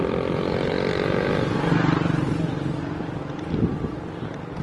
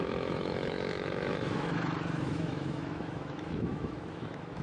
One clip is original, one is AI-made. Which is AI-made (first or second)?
second